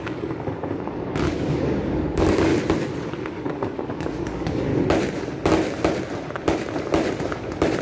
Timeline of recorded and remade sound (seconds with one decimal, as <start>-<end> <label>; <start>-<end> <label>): 0.0-2.5 remade; 2.5-3.3 recorded; 3.3-4.7 remade; 4.7-7.8 recorded